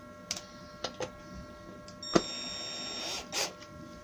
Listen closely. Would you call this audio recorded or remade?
recorded